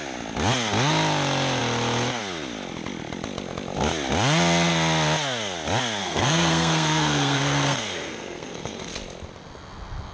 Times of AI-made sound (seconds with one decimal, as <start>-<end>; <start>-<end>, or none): 6.0-8.9